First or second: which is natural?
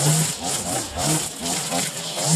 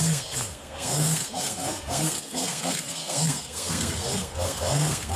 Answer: first